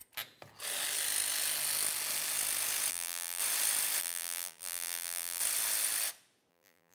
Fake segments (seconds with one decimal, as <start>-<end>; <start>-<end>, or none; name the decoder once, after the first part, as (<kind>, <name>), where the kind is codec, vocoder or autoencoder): 2.9-3.4 (vocoder, BigVGAN v2); 4.0-5.4; 6.5-6.9